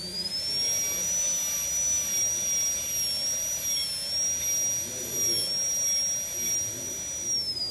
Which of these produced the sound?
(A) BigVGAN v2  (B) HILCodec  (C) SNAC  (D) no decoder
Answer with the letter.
D